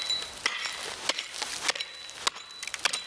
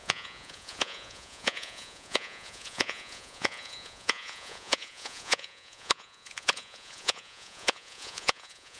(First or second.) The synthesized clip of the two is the second